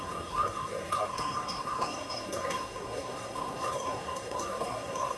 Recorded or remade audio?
remade